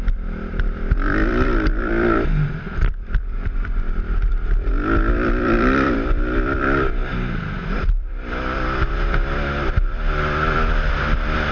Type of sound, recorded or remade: remade